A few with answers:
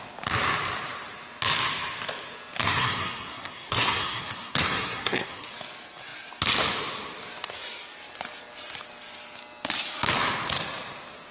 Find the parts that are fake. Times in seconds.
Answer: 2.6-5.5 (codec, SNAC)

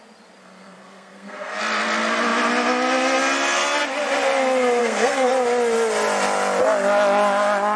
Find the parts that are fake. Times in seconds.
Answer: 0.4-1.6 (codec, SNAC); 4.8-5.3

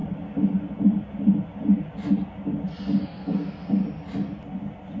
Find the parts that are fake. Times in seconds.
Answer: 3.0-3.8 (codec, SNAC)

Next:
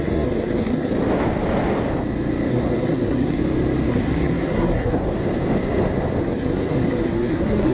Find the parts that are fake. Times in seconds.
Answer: 0.0-0.9 (codec, SNAC); 2.5-3.4; 3.9-5.0; 6.2-7.7

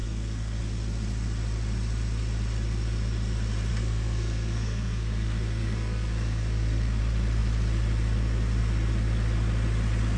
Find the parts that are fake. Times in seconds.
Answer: 0.0-0.6 (codec, SNAC); 3.7-7.0